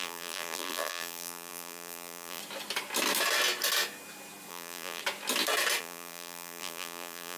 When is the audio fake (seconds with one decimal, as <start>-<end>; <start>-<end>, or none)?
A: 0.0-2.4; 4.5-5.0; 5.8-7.4